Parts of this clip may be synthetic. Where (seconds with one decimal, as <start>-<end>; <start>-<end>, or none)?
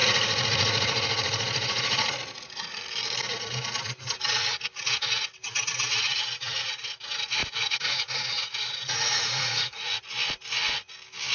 0.0-2.8; 7.4-10.0